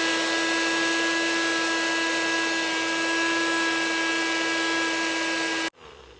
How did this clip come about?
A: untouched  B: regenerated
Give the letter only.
A